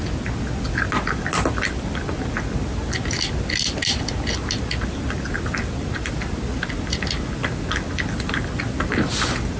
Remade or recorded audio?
recorded